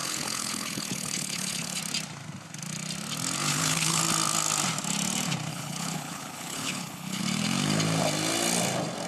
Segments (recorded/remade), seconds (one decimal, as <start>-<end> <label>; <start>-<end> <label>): 0.0-1.8 remade; 1.8-3.5 recorded; 3.5-4.0 remade; 4.0-5.5 recorded; 5.5-7.2 remade; 7.2-9.1 recorded